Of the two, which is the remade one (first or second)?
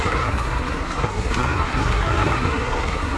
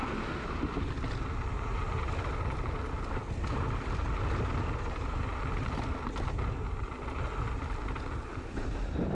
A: first